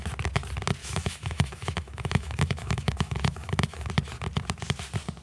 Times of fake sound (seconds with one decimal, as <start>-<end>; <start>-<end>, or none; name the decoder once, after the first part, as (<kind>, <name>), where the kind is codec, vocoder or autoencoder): 0.8-3.9 (autoencoder, DAC-VAE)